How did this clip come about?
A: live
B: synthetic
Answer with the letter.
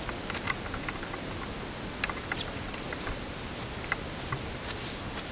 A